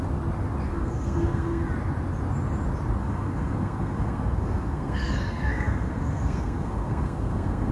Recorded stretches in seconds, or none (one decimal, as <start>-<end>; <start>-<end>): 0.0-0.7; 1.6-3.0